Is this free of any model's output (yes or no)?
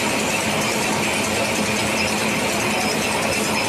yes